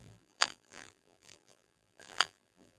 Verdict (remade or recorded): remade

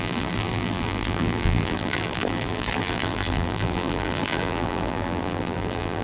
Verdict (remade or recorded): remade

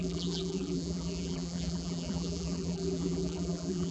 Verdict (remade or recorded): remade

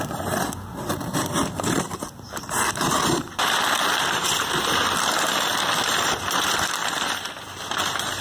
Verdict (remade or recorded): remade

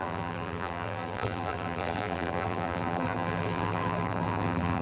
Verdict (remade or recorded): remade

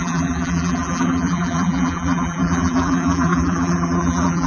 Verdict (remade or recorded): remade